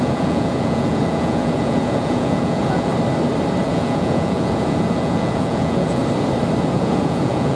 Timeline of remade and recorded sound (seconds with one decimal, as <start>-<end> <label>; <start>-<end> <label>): 0.0-2.9 remade; 2.9-3.6 recorded; 3.6-6.0 remade; 6.0-6.6 recorded; 6.6-7.6 remade